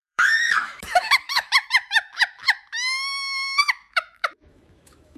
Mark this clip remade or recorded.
remade